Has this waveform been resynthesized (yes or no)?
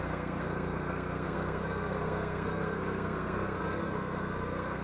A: yes